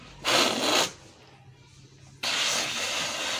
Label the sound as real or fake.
real